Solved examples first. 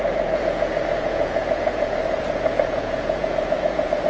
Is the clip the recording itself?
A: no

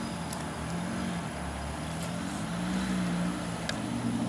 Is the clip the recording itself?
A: yes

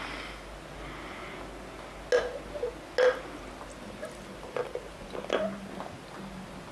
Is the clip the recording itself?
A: yes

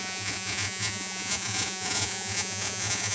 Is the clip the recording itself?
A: no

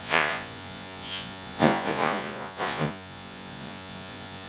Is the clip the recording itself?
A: no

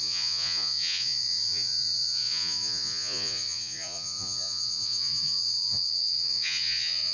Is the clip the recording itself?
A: no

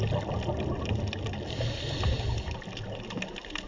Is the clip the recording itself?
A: yes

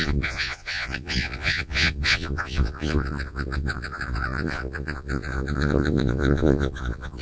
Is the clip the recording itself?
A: no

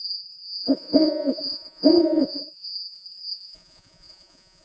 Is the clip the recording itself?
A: no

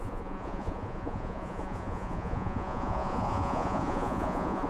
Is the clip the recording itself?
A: no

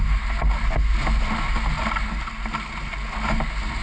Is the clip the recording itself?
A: yes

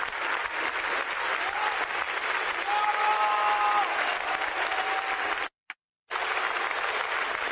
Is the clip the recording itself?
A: yes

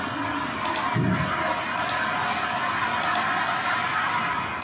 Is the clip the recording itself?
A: yes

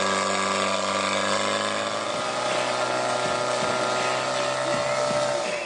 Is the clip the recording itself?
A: yes